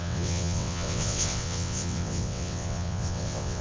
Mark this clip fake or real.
fake